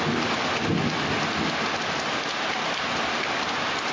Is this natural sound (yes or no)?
yes